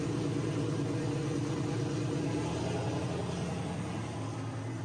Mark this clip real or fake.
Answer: real